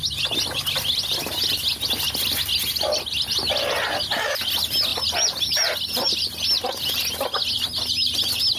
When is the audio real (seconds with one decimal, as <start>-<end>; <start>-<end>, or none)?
0.0-8.6

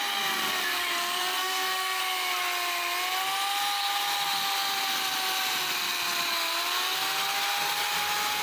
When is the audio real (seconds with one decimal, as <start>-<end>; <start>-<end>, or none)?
0.0-1.2; 2.0-8.4

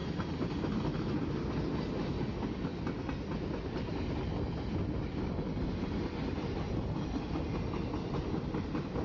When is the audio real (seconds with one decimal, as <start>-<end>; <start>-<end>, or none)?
0.0-9.0

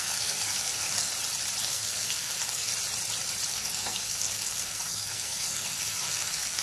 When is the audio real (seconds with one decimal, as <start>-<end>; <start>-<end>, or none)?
1.1-1.6; 2.7-3.5

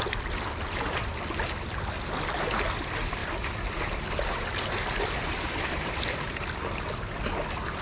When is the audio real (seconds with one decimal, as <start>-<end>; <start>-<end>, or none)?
1.1-2.4